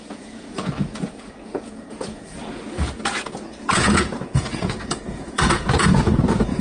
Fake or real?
fake